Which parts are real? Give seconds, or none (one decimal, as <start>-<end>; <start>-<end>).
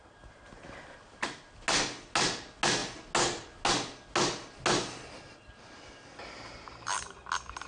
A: 0.0-7.7